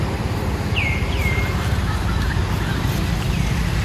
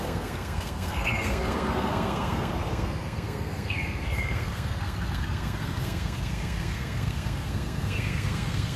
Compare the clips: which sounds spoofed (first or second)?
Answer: second